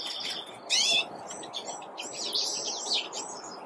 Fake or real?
real